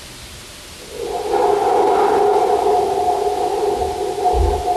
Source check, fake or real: real